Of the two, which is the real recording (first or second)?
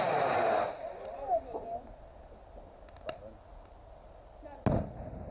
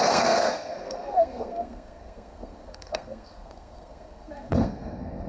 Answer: first